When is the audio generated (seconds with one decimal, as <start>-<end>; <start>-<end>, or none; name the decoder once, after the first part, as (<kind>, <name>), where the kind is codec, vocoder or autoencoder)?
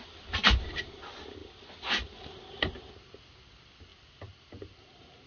none